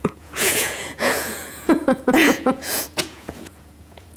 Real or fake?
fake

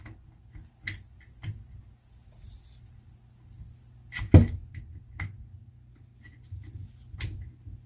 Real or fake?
real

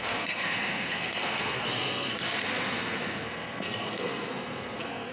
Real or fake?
fake